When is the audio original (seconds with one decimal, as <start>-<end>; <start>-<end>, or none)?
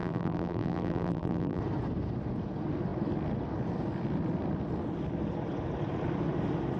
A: 1.6-6.8